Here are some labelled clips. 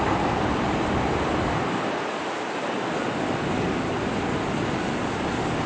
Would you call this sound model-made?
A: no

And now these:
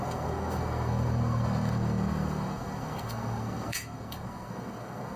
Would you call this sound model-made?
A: yes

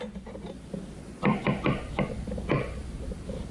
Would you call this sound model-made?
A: no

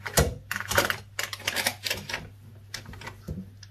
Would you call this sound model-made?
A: yes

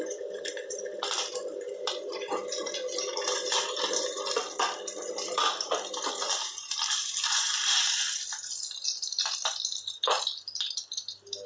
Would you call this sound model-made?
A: yes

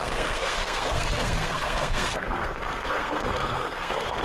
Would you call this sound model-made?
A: yes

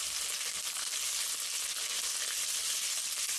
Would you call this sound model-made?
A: no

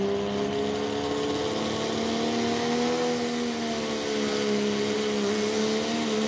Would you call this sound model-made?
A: no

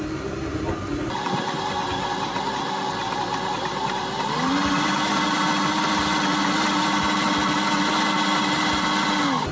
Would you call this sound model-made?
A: no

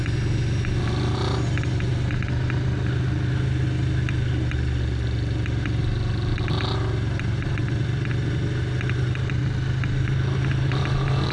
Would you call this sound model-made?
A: no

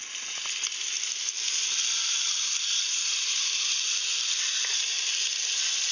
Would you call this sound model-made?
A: no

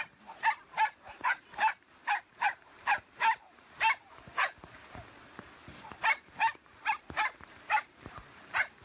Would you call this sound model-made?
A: yes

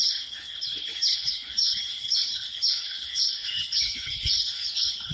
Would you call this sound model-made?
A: yes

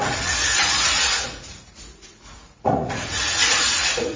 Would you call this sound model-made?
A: yes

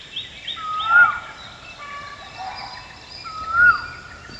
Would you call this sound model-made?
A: no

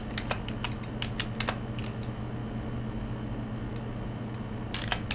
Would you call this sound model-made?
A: no